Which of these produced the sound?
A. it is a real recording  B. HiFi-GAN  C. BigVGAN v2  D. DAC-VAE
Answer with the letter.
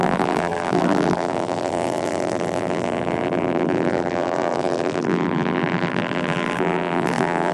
C